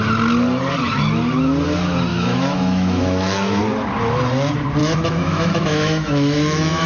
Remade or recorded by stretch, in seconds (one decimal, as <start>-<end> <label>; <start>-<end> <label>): 0.0-2.1 recorded; 2.1-3.6 remade; 3.6-4.8 recorded; 4.8-6.9 remade